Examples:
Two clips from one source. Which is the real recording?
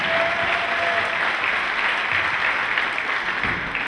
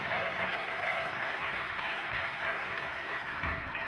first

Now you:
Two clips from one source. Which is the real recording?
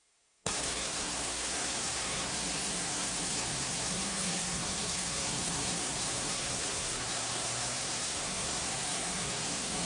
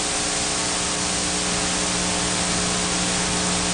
second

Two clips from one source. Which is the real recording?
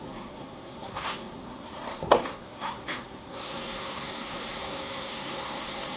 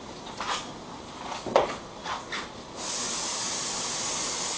second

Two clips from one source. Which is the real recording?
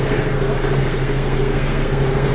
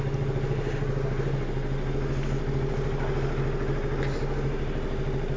second